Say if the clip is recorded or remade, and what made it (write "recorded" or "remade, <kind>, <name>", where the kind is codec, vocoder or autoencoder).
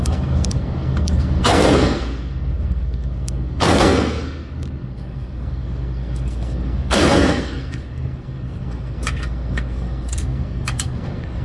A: remade, codec, SNAC